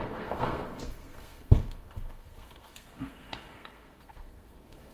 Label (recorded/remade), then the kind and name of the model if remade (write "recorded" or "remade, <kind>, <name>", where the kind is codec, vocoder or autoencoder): remade, codec, SNAC